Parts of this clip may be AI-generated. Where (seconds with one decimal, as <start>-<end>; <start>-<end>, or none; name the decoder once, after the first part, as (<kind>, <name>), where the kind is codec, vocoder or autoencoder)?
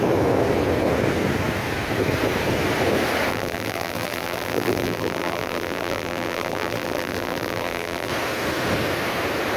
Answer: 3.3-8.1 (vocoder, BigVGAN v2)